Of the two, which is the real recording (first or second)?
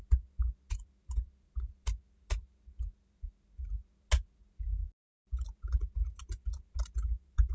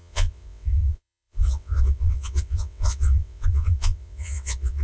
first